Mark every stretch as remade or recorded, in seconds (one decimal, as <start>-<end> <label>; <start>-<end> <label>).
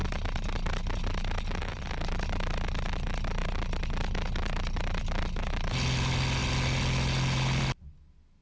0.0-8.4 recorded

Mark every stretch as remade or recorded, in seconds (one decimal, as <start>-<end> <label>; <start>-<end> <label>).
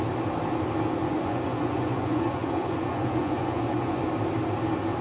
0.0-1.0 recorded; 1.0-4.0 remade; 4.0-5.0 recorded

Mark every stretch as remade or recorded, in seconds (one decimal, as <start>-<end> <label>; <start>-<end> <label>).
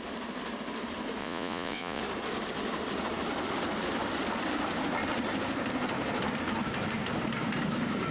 0.0-1.2 recorded; 1.2-2.0 remade; 2.0-8.1 recorded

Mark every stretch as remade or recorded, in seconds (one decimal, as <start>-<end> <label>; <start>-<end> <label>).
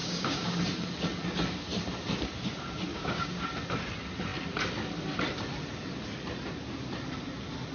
0.0-0.6 remade; 0.6-2.9 recorded; 2.9-3.4 remade; 3.4-7.7 recorded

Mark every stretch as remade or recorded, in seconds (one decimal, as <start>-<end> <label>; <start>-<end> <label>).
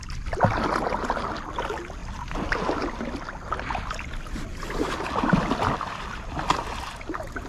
0.0-7.5 recorded